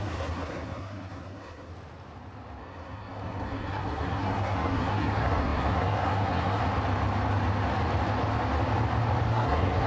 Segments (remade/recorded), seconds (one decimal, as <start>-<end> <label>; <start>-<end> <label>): 0.0-1.7 remade; 1.7-2.6 recorded; 2.6-6.6 remade; 6.6-9.3 recorded; 9.3-9.9 remade